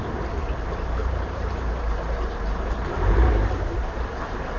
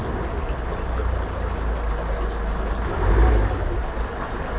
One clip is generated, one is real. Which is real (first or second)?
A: second